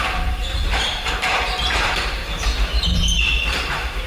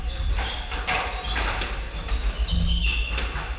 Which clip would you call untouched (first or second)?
second